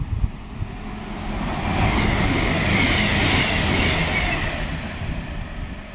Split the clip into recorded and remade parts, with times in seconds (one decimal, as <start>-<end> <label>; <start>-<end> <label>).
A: 0.0-5.9 recorded